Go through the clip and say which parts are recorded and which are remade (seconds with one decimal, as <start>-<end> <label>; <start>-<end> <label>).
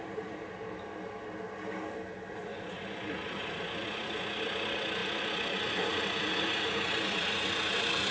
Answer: 0.0-0.4 remade; 0.4-2.3 recorded; 2.3-8.1 remade